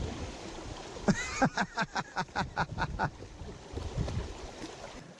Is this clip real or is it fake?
fake